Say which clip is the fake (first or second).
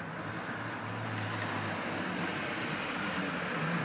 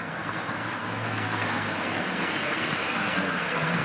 second